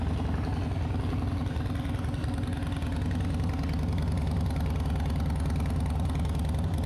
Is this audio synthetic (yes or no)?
no